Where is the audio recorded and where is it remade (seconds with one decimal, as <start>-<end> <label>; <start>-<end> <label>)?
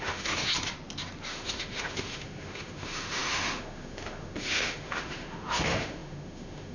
0.0-0.5 remade; 0.5-1.3 recorded; 1.3-6.7 remade